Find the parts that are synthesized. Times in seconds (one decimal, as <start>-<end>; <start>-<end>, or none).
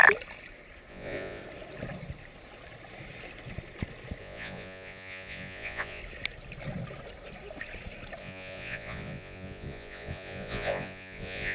0.9-1.4; 4.2-6.0; 8.2-11.5